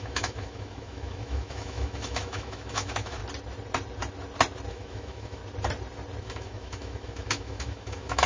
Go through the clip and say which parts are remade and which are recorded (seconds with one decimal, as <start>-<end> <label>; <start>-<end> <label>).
0.0-3.2 remade; 3.2-4.7 recorded; 4.7-5.4 remade; 5.4-6.2 recorded; 6.2-8.3 remade